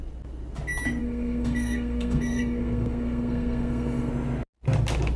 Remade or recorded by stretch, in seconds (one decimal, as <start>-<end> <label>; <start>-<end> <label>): 0.0-1.0 recorded; 1.0-4.1 remade; 4.1-5.2 recorded